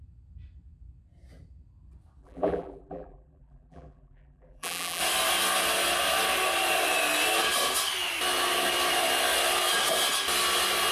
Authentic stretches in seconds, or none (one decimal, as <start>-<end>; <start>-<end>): 0.0-2.2; 5.0-10.9